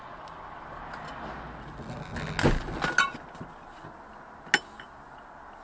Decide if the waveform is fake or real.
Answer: real